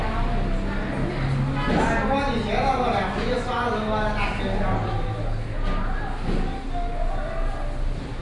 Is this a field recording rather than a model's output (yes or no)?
yes